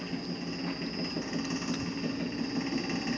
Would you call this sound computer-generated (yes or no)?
no